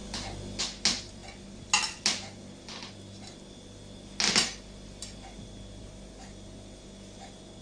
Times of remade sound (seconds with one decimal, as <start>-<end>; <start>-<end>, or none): none